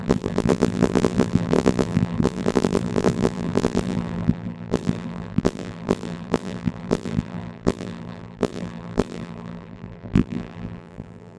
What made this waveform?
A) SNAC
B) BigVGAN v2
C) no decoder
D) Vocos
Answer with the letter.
B